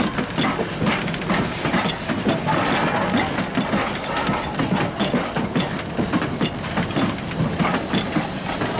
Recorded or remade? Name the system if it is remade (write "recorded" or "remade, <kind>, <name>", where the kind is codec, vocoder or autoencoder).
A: recorded